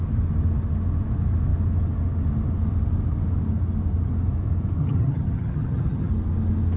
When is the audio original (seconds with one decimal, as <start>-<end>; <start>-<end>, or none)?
0.0-4.8; 6.1-6.8